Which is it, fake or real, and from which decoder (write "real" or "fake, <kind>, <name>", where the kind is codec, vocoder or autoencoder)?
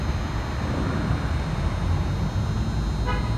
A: real